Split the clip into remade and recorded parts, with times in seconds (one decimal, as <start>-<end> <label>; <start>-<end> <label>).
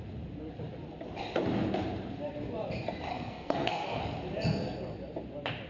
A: 0.0-3.1 recorded; 3.1-4.0 remade; 4.0-5.7 recorded